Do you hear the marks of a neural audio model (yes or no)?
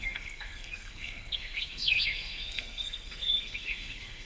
yes